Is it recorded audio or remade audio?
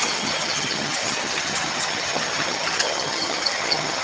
remade